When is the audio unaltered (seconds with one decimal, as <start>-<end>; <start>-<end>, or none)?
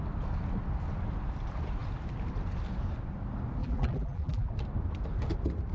0.0-3.6; 4.5-5.7